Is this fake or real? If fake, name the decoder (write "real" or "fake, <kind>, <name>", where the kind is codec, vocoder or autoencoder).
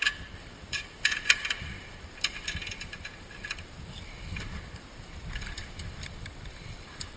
fake, vocoder, BigVGAN v2